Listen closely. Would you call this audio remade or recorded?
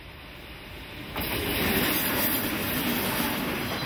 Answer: recorded